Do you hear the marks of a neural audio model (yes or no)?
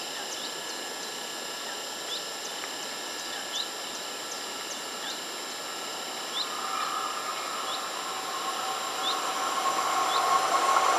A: no